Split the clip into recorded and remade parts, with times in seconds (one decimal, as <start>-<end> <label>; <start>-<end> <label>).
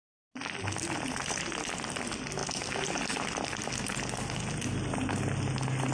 0.0-5.9 recorded